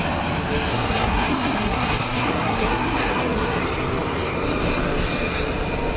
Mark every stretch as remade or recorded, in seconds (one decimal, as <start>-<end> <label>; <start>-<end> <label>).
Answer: 0.0-0.7 recorded; 0.7-3.6 remade; 3.6-6.0 recorded